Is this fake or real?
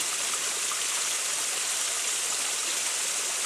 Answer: real